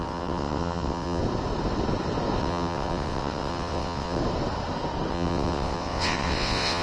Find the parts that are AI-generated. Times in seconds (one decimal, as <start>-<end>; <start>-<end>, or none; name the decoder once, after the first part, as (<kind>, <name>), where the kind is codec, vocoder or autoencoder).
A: 0.0-1.2 (vocoder, WaveNeXt); 2.4-4.2; 5.1-6.8